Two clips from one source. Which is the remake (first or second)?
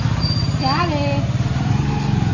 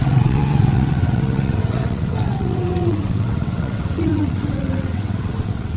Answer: second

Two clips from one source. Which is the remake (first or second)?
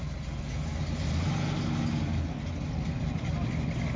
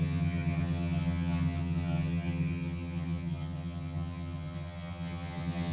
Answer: second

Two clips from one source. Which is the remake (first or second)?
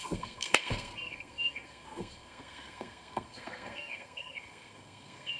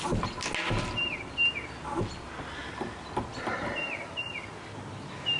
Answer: first